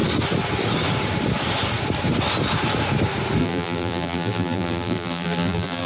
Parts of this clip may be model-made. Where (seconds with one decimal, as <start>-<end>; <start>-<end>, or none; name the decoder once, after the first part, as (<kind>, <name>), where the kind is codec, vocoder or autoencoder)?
3.4-5.9 (vocoder, BigVGAN v2)